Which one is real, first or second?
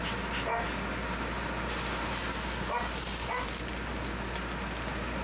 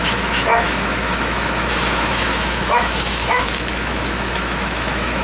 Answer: first